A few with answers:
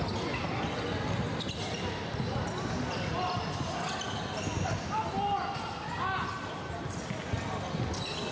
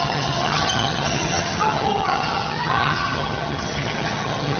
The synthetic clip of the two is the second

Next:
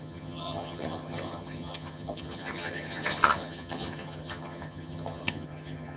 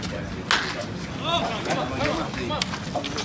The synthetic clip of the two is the first